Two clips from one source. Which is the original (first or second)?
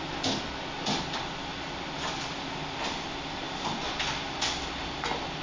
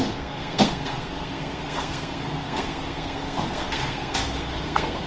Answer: first